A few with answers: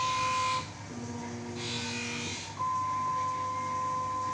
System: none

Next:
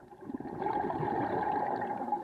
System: vocoder, BigVGAN v2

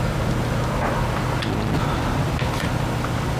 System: none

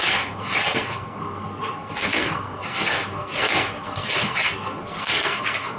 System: codec, SNAC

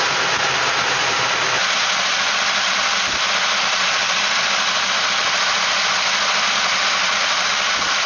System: none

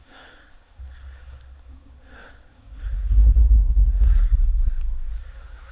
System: codec, SNAC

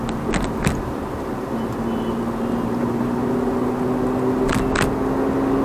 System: none